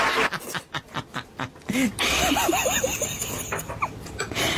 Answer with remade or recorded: recorded